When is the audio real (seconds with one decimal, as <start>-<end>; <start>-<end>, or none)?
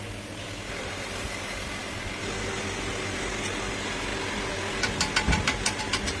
0.0-6.2